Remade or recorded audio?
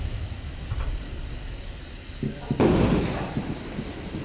recorded